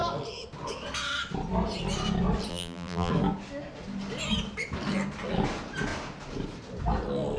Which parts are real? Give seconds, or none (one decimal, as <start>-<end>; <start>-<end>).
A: 0.0-2.5; 3.1-7.4